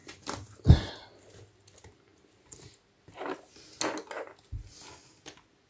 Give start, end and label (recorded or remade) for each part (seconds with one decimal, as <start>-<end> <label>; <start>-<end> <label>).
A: 0.0-5.7 recorded